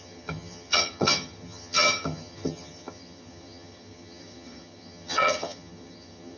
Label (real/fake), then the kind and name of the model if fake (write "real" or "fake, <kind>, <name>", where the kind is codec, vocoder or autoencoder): fake, vocoder, HiFi-GAN